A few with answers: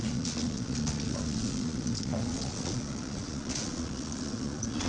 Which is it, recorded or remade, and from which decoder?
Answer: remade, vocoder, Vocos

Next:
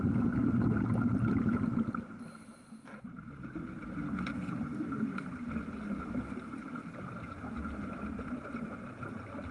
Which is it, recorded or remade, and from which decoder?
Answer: recorded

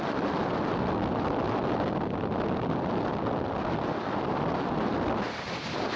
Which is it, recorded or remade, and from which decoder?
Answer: recorded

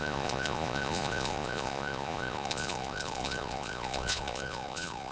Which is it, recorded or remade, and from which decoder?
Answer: remade, vocoder, Vocos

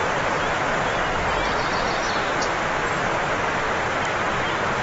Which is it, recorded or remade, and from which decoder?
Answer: recorded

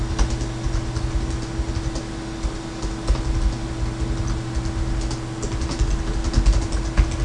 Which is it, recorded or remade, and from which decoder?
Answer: recorded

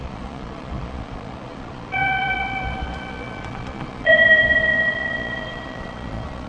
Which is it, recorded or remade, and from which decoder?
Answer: remade, vocoder, Vocos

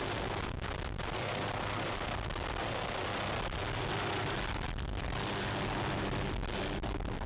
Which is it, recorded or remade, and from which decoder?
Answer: recorded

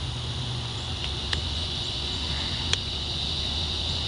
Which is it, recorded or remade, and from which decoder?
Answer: remade, vocoder, Vocos